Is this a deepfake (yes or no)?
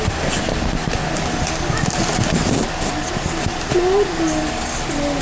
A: no